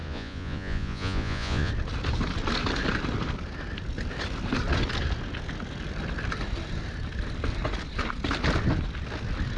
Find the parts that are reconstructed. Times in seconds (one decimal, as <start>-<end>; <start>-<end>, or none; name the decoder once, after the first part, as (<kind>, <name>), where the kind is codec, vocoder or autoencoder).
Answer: 0.0-1.7 (vocoder, Vocos)